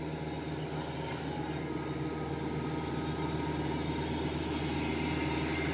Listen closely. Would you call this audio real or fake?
real